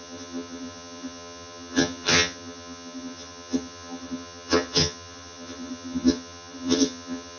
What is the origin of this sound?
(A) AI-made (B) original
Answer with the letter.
A